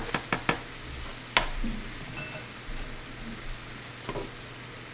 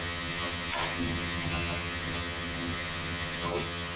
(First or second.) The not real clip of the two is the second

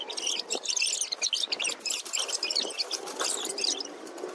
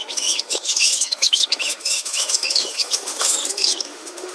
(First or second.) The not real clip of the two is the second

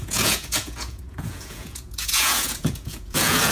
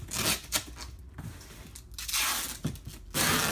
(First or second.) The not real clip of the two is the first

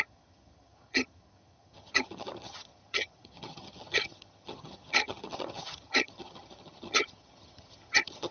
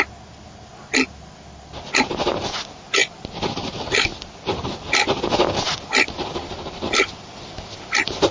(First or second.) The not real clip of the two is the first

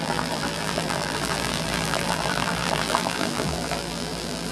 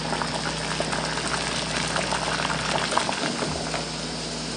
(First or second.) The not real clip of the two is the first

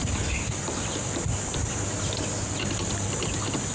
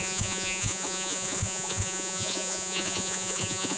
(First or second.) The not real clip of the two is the second